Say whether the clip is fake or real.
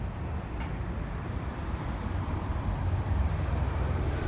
fake